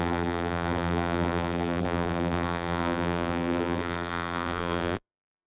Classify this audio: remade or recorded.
remade